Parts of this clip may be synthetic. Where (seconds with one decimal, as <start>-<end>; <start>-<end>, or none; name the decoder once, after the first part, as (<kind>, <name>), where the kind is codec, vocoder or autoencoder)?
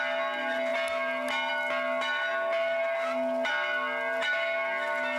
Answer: none